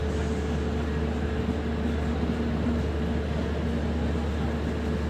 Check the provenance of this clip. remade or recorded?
recorded